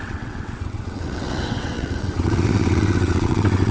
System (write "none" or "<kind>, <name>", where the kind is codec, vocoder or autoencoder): vocoder, WaveNeXt